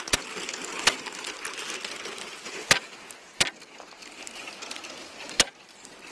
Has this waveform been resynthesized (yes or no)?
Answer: no